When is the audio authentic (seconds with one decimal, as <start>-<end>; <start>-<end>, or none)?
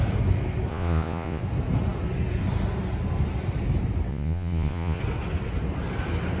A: 0.0-0.7; 1.4-4.1; 5.0-6.4